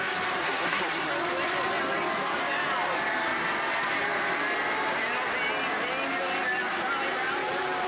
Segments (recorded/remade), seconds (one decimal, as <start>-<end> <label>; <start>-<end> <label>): 0.0-0.4 recorded; 0.4-1.1 remade; 1.1-7.9 recorded